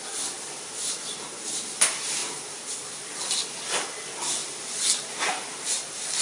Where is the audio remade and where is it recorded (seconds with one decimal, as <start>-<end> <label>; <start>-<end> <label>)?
0.0-6.2 recorded